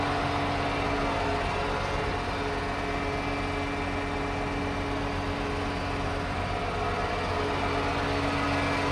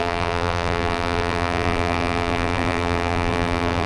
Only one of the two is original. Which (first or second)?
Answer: first